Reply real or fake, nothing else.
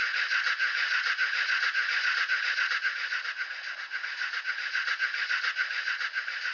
real